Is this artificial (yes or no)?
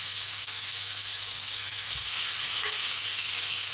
yes